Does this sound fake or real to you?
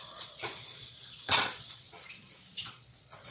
fake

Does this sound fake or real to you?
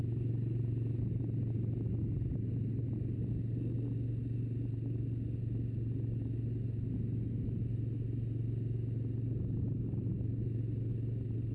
real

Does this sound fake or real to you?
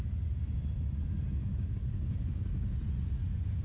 real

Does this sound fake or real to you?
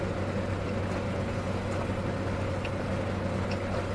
real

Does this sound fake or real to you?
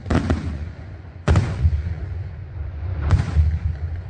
fake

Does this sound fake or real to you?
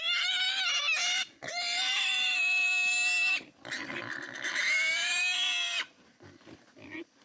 real